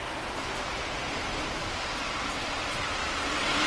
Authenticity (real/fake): real